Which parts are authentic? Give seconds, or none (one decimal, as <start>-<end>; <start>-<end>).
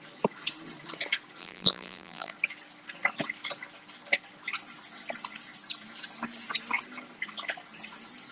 0.0-1.4; 2.3-8.3